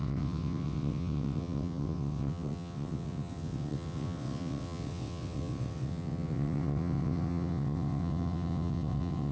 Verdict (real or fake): fake